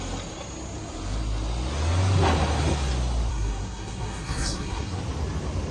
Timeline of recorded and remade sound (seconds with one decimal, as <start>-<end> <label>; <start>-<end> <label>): 0.0-3.3 recorded; 3.3-5.0 remade; 5.0-5.7 recorded